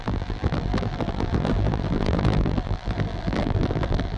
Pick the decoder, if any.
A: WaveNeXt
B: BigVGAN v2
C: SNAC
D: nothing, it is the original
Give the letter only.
B